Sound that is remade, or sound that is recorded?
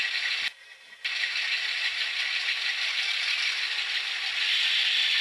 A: recorded